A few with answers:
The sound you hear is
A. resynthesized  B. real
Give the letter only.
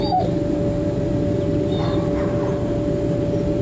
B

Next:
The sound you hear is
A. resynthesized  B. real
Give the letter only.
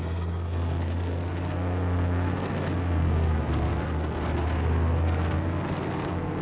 A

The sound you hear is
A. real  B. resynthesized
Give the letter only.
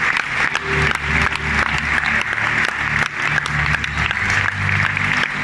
A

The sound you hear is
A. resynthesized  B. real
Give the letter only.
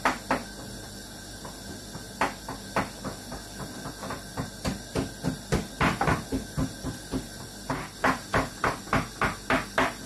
B